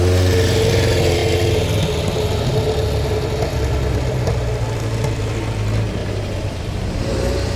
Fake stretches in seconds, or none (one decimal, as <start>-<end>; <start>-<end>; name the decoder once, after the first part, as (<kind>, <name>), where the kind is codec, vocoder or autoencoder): 6.0-7.0 (vocoder, BigVGAN v2)